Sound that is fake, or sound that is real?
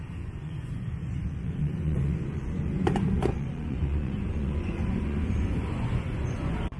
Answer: fake